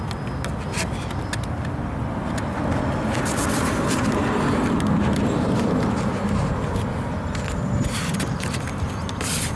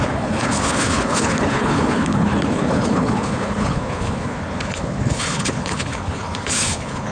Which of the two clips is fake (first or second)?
second